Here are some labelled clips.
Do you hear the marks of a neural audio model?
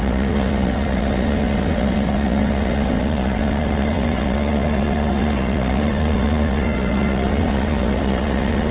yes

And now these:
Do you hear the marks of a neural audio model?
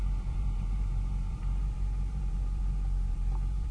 yes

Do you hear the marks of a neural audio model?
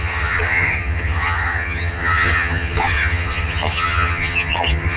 yes